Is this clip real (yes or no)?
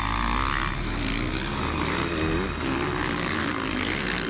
yes